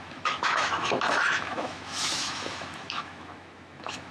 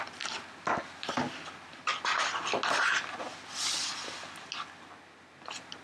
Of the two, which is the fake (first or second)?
first